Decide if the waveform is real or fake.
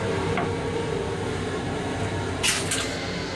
real